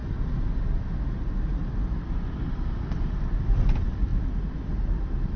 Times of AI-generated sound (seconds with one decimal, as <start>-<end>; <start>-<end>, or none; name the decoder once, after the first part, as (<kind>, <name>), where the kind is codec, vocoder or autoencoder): 0.0-5.4 (vocoder, BigVGAN v2)